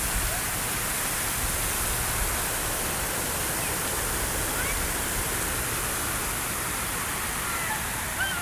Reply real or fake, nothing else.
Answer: real